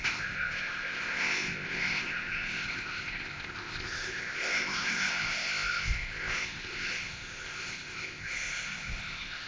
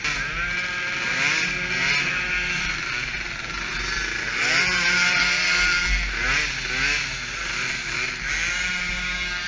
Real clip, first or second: second